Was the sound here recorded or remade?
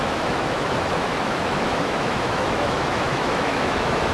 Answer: remade